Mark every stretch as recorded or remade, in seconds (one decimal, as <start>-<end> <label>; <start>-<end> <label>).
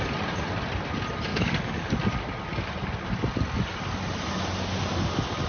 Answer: 0.0-1.3 recorded; 1.3-1.9 remade; 1.9-5.5 recorded